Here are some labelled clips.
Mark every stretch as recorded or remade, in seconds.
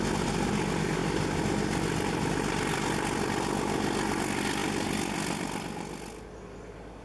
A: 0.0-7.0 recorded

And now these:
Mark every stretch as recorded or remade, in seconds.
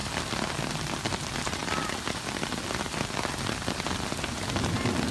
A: 0.0-5.1 recorded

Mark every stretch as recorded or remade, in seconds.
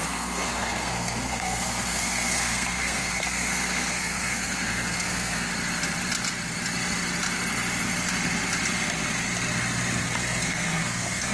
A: 0.0-5.5 remade; 5.5-10.0 recorded; 10.0-11.3 remade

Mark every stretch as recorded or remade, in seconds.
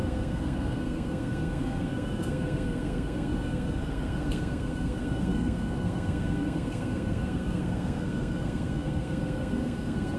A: 0.0-10.2 remade